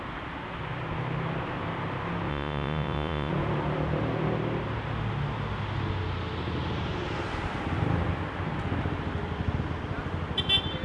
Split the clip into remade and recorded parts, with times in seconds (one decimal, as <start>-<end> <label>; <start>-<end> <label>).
0.0-2.3 recorded; 2.3-3.3 remade; 3.3-10.8 recorded